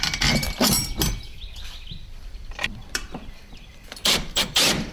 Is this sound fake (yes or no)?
yes